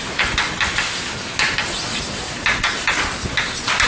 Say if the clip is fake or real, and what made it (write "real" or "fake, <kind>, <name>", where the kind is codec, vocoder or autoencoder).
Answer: real